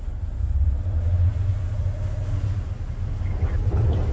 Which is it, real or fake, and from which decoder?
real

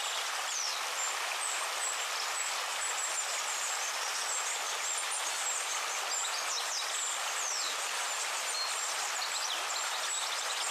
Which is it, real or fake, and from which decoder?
real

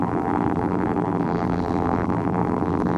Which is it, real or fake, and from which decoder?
fake, vocoder, BigVGAN v2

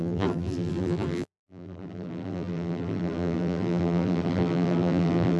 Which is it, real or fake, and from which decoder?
fake, vocoder, BigVGAN v2